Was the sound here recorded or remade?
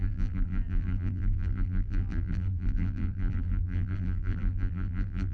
remade